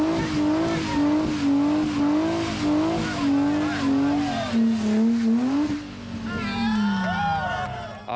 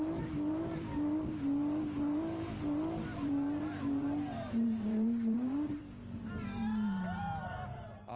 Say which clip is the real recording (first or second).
first